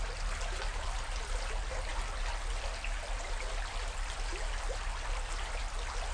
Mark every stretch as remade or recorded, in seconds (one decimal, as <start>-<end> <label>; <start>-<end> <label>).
0.0-6.1 recorded